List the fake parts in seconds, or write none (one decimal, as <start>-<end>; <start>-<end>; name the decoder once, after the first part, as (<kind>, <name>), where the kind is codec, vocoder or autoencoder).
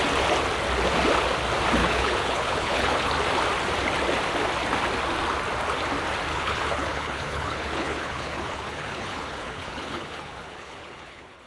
1.8-3.1 (codec, HILCodec); 6.3-11.5